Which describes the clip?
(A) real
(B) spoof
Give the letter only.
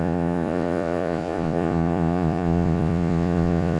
B